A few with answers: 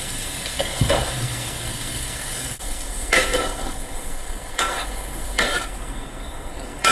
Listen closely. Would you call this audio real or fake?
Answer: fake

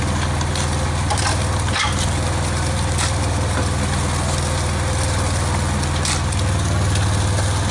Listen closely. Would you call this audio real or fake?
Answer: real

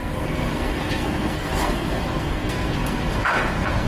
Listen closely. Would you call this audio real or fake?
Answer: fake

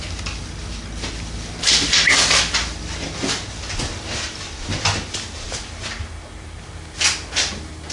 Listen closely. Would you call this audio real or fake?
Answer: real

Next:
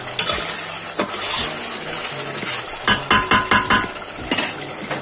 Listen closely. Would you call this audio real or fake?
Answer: real